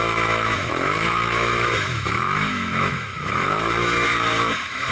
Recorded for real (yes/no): no